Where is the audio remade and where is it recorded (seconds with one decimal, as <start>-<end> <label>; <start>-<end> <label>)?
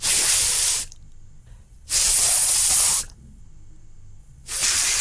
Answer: 0.0-1.4 recorded; 1.4-3.4 remade; 3.4-4.2 recorded; 4.2-5.0 remade